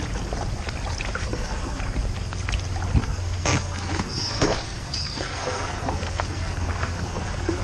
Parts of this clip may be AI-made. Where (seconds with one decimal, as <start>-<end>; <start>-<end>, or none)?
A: 1.2-1.8; 3.0-7.6